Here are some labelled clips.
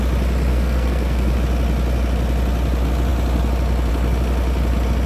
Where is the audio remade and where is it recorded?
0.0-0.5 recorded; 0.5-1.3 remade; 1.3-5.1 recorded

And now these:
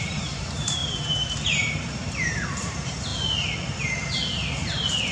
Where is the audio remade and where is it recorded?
0.0-3.1 remade; 3.1-5.1 recorded

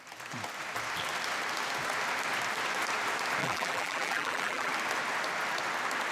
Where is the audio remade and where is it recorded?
0.0-3.4 recorded; 3.4-4.7 remade; 4.7-6.1 recorded

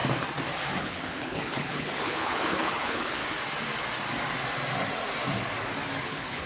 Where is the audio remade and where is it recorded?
0.0-0.8 recorded; 0.8-3.2 remade; 3.2-6.0 recorded; 6.0-6.5 remade

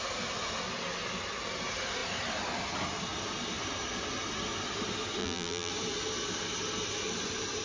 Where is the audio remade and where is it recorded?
0.0-5.2 recorded; 5.2-5.7 remade; 5.7-7.6 recorded